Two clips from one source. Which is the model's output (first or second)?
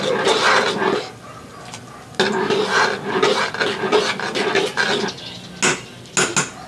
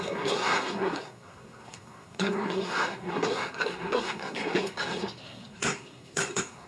second